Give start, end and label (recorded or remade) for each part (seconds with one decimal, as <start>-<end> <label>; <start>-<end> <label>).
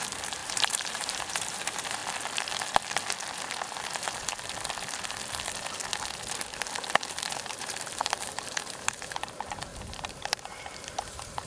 0.0-2.0 remade; 2.0-7.2 recorded; 7.2-11.5 remade